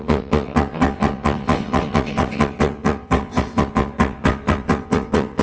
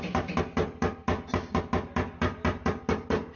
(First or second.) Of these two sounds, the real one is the second